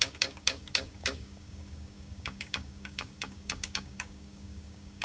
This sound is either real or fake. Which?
fake